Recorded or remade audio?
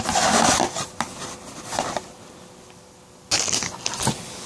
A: recorded